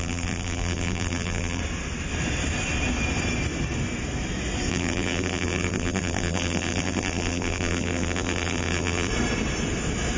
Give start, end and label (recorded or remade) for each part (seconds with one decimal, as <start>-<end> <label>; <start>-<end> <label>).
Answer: 0.0-1.6 remade; 1.6-4.7 recorded; 4.7-9.1 remade; 9.1-10.2 recorded